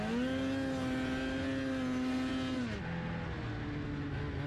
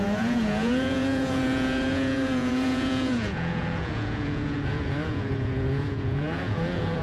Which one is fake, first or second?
second